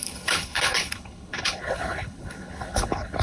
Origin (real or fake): fake